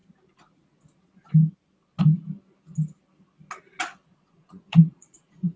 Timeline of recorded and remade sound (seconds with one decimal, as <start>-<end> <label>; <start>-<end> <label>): 0.0-4.1 recorded; 4.1-5.6 remade